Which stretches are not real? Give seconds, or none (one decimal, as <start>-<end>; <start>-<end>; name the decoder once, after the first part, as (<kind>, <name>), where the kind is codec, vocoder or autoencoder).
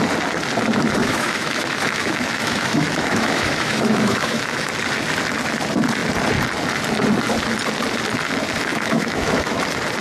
1.0-4.7 (autoencoder, DAC-VAE); 8.7-9.6